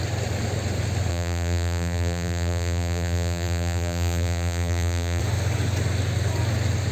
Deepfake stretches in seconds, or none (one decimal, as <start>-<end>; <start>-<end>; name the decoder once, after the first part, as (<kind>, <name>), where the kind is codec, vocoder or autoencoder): 1.1-5.2 (vocoder, BigVGAN v2)